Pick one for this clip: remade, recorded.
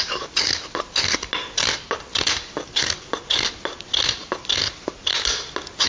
recorded